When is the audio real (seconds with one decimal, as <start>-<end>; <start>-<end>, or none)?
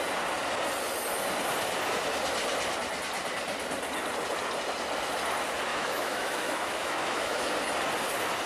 0.0-5.7; 7.5-8.5